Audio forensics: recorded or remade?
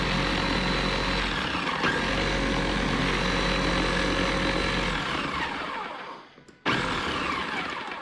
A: recorded